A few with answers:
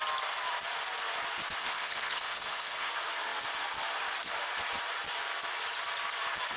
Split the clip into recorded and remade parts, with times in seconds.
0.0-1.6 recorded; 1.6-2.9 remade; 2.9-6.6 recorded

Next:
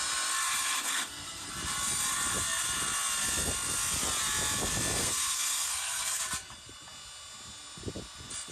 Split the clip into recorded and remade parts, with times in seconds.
0.0-0.4 recorded; 0.4-1.5 remade; 1.5-5.0 recorded; 5.0-6.2 remade; 6.2-8.5 recorded

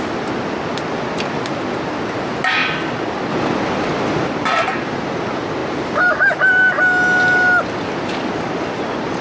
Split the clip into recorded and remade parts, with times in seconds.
0.0-9.2 recorded